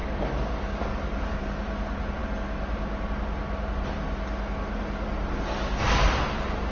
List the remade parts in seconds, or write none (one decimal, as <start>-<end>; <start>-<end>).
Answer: 0.0-1.4